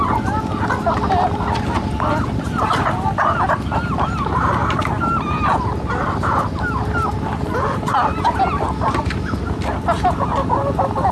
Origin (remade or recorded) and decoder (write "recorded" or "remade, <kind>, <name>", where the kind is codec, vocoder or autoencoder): recorded